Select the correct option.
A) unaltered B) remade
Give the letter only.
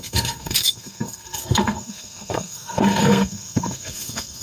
B